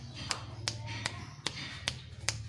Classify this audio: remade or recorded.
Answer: recorded